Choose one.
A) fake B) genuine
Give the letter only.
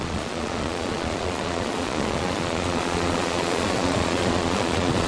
A